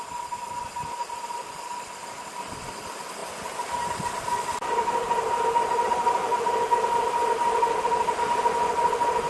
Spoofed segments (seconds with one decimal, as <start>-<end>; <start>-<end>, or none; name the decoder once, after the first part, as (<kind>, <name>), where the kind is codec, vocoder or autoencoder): none